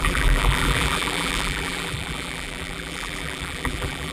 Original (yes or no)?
no